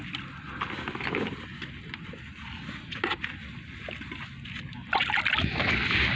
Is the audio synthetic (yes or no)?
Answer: no